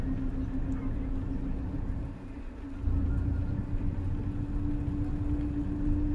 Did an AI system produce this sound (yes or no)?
no